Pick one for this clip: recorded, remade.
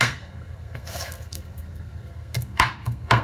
remade